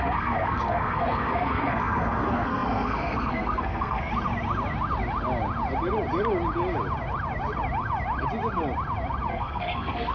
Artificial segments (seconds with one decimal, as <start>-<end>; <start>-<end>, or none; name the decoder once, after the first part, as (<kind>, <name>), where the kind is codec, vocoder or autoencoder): 0.0-4.1 (codec, SNAC); 9.3-10.1